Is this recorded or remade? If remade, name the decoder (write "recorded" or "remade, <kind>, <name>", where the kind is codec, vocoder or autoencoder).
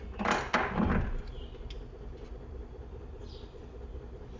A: recorded